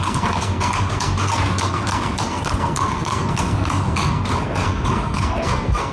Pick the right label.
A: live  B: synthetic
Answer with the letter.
B